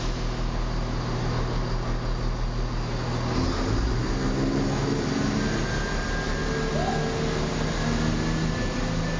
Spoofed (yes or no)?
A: no